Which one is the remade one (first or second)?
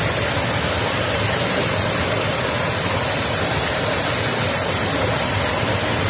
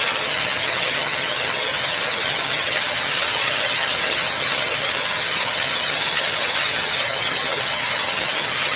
second